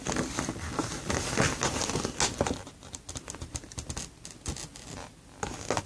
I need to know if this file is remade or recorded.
recorded